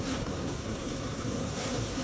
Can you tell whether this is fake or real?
fake